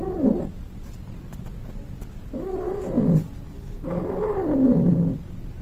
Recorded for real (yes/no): yes